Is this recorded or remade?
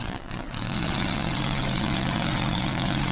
remade